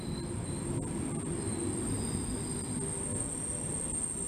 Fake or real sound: real